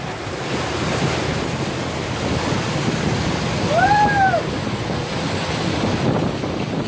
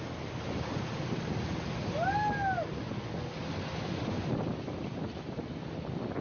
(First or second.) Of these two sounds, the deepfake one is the first